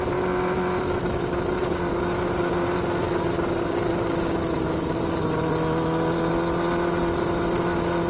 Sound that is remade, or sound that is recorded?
recorded